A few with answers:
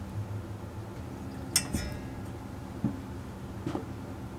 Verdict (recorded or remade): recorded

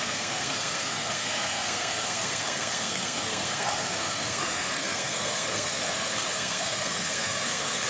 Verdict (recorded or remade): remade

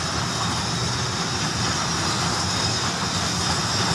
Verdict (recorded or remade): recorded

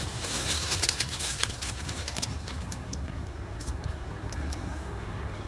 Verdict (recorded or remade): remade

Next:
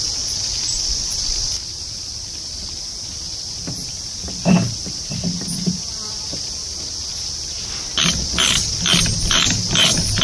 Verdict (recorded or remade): recorded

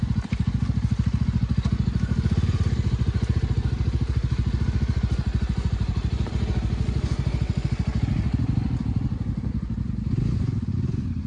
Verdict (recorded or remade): recorded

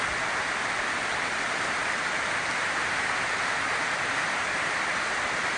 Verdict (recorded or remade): recorded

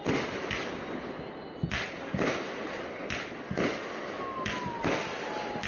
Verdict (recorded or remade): recorded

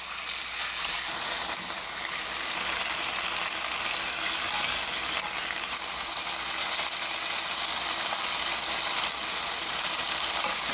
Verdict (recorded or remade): recorded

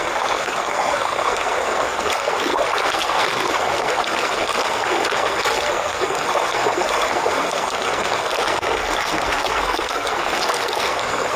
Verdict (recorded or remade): remade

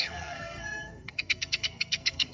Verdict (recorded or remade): remade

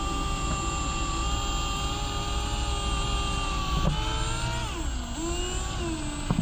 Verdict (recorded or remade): recorded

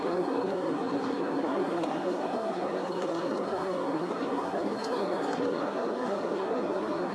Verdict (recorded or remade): remade